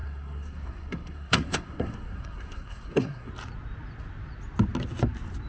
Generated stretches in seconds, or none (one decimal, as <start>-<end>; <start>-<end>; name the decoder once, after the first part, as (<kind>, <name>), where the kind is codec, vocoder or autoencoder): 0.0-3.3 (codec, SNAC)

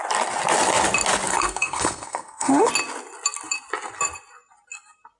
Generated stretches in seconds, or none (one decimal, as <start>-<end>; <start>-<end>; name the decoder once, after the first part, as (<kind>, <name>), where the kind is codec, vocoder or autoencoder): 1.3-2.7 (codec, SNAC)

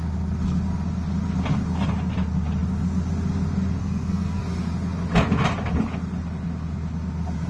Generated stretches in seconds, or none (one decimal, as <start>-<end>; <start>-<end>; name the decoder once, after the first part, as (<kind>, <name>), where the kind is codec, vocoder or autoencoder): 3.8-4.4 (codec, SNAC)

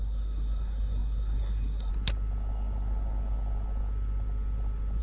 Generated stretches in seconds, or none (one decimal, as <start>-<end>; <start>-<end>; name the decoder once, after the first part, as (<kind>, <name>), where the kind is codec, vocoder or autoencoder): 0.0-1.9 (codec, SNAC)

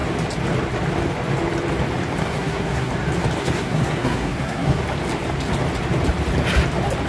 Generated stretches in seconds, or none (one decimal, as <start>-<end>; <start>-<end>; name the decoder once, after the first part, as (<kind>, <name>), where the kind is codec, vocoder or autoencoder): 2.2-2.9 (codec, SNAC); 3.4-4.8

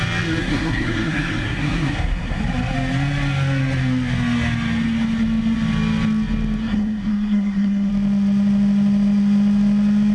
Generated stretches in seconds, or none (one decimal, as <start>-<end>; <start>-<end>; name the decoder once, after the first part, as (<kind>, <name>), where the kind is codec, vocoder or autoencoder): 0.4-2.4 (codec, SNAC); 6.6-7.9